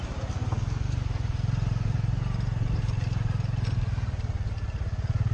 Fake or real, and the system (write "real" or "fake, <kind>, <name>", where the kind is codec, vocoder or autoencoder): real